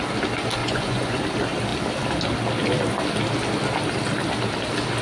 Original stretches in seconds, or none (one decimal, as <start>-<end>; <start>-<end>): 0.0-0.6; 1.2-5.0